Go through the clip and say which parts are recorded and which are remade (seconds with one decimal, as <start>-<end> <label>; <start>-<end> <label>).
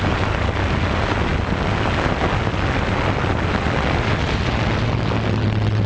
0.0-5.9 recorded